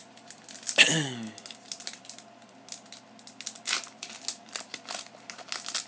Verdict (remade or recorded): recorded